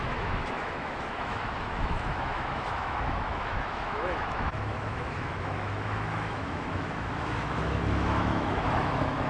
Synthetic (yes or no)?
yes